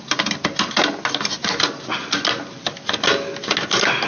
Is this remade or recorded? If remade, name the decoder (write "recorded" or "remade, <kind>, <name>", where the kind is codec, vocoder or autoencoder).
recorded